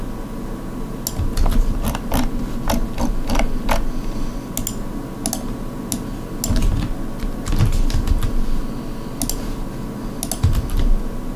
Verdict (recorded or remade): recorded